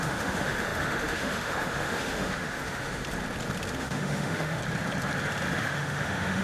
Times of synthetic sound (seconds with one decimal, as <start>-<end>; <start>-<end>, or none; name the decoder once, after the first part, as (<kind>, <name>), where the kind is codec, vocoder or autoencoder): 0.0-3.0 (autoencoder, DAC-VAE); 3.8-4.6; 5.6-6.4